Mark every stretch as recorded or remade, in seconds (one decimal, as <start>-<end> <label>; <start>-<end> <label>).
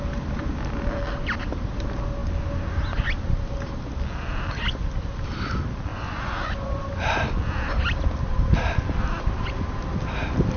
0.0-5.9 recorded; 5.9-6.8 remade; 6.8-10.6 recorded